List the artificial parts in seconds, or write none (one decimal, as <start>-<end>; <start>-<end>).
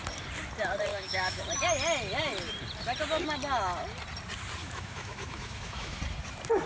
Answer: 0.9-1.4; 4.6-6.0